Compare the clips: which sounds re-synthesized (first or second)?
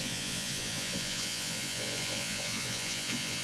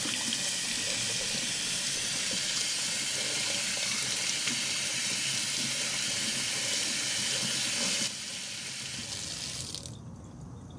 first